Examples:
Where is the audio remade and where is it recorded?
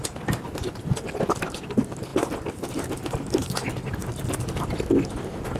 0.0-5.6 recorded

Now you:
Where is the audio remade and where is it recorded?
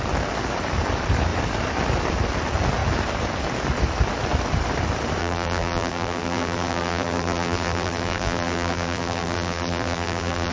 0.0-5.2 recorded; 5.2-10.5 remade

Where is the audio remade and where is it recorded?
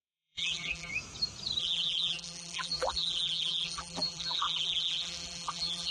0.0-0.9 remade; 0.9-1.6 recorded; 1.6-5.9 remade